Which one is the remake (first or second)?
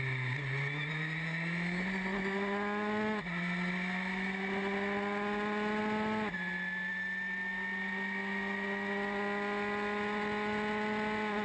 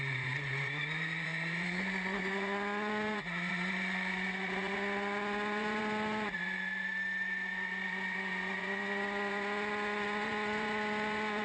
second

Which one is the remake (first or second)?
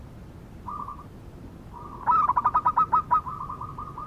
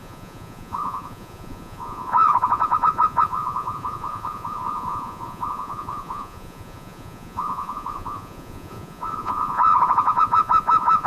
second